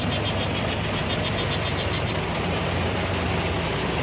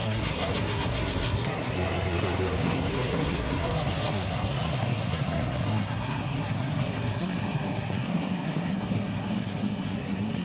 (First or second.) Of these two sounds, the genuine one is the first